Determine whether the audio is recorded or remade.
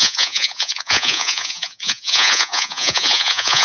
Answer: remade